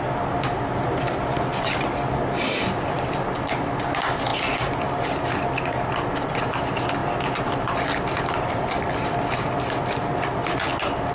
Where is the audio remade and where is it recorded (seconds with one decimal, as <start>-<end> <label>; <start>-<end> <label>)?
0.0-1.5 recorded; 1.5-3.8 remade; 3.8-7.0 recorded; 7.0-10.6 remade; 10.6-11.1 recorded